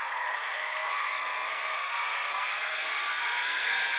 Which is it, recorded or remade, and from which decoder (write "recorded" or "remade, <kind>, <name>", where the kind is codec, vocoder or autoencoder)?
remade, codec, SNAC